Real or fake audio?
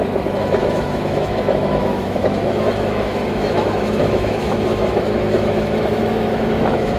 fake